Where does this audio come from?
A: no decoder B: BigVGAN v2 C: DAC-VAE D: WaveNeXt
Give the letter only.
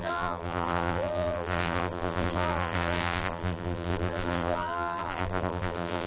B